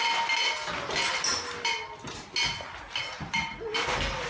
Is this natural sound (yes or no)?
yes